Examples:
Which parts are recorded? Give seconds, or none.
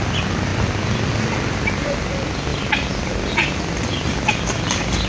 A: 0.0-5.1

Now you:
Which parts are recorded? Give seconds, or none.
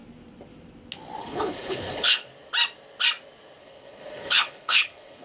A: 0.0-1.2; 2.3-3.6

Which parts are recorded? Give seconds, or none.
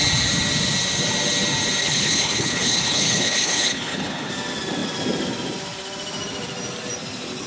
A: 0.0-1.8; 4.3-7.5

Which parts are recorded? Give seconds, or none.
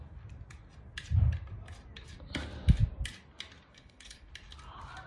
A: 0.0-3.7; 4.3-5.1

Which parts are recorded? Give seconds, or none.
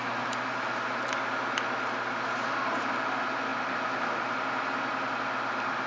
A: 0.0-5.9